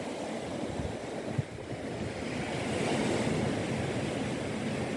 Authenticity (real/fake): real